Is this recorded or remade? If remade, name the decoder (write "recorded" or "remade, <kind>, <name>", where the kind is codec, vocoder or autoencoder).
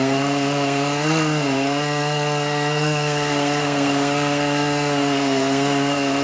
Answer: remade, codec, SNAC